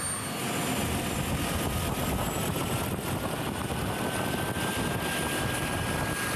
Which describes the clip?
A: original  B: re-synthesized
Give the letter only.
A